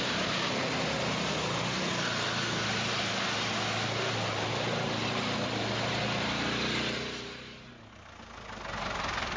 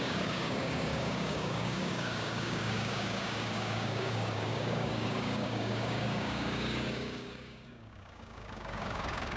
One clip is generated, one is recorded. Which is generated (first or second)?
second